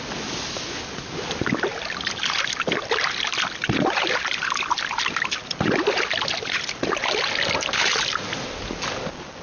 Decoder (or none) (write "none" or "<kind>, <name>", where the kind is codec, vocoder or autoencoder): none